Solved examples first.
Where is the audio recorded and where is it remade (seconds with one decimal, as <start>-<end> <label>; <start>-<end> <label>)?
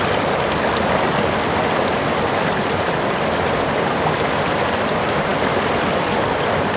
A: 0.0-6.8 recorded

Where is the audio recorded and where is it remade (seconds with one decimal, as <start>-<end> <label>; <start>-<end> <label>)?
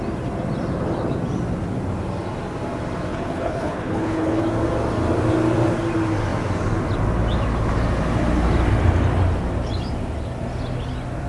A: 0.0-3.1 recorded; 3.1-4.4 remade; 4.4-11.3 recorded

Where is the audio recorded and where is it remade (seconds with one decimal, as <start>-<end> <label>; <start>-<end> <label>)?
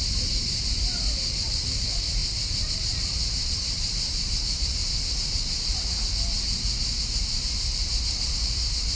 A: 0.0-4.8 remade; 4.8-7.0 recorded; 7.0-7.9 remade; 7.9-8.5 recorded; 8.5-8.9 remade